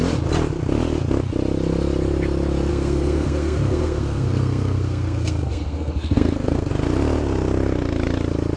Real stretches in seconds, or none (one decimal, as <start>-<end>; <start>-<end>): 0.0-2.7; 6.7-8.6

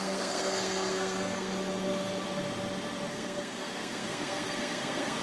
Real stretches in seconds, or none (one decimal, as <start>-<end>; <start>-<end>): 1.5-3.1

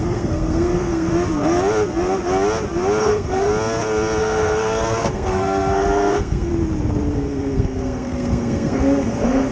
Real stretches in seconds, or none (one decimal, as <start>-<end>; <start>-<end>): 1.1-3.0; 3.5-4.2; 6.5-7.1

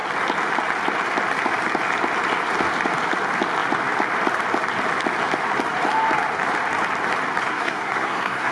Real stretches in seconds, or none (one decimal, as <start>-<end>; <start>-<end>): 0.0-7.5

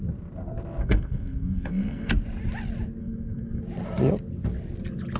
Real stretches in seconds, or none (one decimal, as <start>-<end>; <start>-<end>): 0.0-0.8; 2.1-3.0; 3.6-5.2